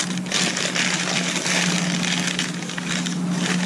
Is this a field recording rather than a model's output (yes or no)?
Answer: yes